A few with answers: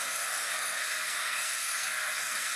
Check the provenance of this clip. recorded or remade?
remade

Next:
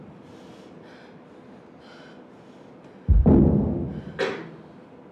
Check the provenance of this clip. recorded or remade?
recorded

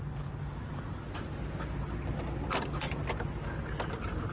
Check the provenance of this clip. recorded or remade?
recorded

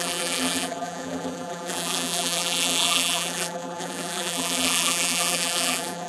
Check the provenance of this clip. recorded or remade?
remade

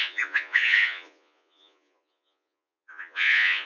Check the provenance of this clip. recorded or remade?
remade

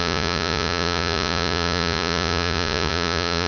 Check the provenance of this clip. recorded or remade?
remade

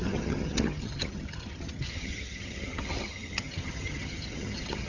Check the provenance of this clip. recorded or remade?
remade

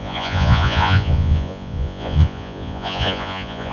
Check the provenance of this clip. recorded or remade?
remade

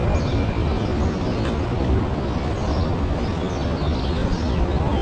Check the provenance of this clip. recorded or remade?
recorded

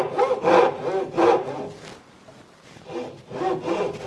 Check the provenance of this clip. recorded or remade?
recorded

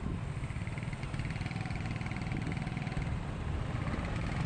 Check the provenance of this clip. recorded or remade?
recorded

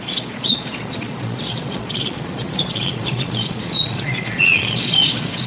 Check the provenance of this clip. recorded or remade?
remade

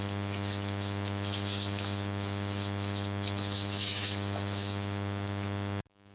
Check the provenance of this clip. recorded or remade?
remade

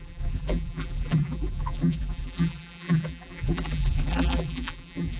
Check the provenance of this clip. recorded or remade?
remade